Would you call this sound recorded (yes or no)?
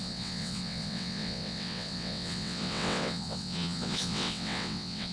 no